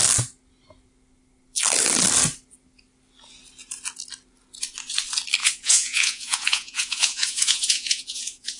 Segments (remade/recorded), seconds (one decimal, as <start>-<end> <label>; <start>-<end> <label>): 0.0-5.4 recorded; 5.4-8.6 remade